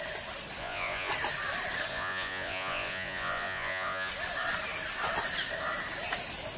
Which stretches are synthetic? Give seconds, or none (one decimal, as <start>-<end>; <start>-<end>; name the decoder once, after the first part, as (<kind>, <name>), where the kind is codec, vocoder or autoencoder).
0.6-1.1 (vocoder, Vocos); 1.9-4.1